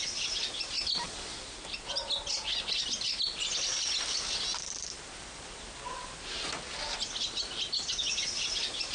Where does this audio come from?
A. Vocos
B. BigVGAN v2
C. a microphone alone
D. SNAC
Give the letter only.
C